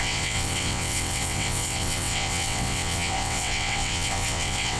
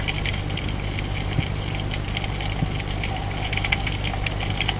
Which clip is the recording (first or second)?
second